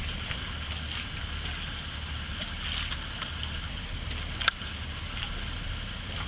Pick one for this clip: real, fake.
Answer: real